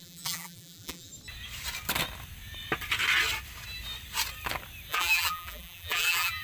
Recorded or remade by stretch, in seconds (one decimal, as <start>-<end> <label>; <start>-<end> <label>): 0.0-1.1 remade; 1.1-4.9 recorded; 4.9-6.4 remade